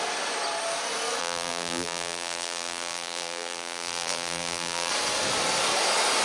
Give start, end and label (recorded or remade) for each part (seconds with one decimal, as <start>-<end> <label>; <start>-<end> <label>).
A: 0.0-1.2 recorded; 1.2-4.9 remade; 4.9-6.2 recorded